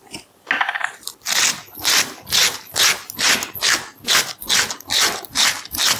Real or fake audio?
real